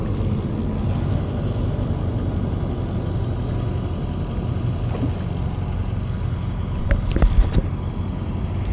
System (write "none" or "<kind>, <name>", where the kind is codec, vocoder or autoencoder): none